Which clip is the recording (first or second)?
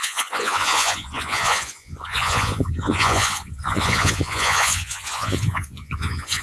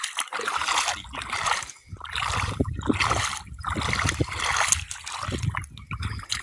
second